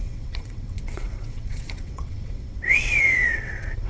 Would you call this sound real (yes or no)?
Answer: no